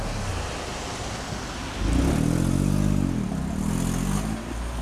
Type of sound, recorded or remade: recorded